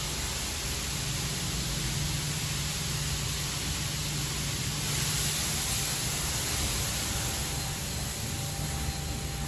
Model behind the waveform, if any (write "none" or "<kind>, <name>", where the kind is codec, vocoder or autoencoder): none